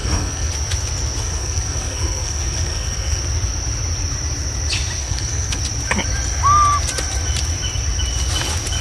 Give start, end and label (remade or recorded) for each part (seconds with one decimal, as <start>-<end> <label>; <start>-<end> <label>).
0.0-0.5 remade; 0.5-1.2 recorded; 1.2-3.2 remade; 3.2-5.0 recorded; 5.0-5.6 remade; 5.6-8.8 recorded